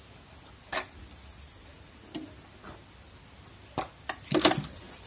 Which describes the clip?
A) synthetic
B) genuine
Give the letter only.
B